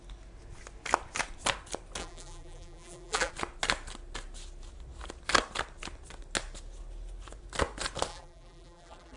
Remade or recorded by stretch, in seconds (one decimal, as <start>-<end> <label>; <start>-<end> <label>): 0.0-2.0 recorded; 2.0-3.3 remade; 3.3-8.1 recorded; 8.1-9.2 remade